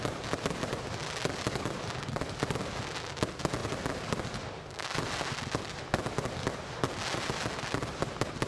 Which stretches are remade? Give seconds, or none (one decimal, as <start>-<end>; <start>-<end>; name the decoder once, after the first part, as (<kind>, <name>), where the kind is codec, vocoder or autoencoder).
1.0-1.6 (vocoder, BigVGAN v2)